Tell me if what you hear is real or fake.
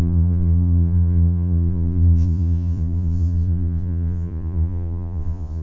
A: fake